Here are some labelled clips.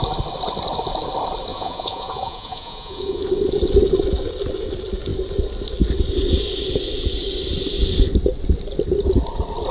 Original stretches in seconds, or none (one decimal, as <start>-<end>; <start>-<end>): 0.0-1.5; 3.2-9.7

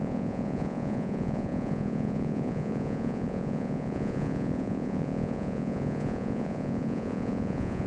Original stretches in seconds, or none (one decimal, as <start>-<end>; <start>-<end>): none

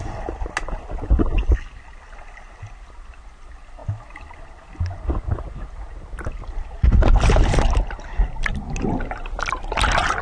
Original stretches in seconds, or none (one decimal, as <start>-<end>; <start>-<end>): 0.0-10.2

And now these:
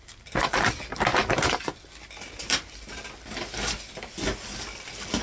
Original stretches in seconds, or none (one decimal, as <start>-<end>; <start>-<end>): 0.0-5.2